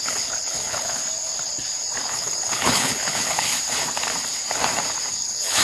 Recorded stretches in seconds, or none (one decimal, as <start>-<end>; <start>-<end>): 1.0-2.1; 3.5-5.1